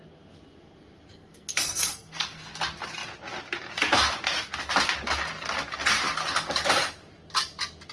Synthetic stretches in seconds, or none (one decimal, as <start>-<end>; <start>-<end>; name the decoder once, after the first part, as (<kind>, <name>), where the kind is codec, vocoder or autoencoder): 1.1-2.5 (codec, SNAC)